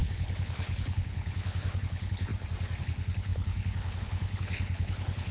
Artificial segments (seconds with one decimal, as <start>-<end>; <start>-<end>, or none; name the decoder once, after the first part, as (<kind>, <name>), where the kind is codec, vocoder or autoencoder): 0.0-2.3 (codec, HILCodec); 2.8-5.3